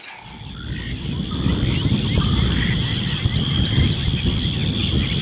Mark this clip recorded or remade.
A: recorded